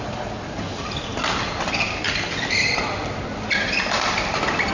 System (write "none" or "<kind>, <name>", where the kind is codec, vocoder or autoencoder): none